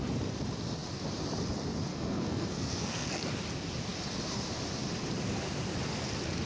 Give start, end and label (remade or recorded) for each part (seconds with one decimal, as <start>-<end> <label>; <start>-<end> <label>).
0.0-1.9 recorded; 1.9-3.3 remade; 3.3-6.5 recorded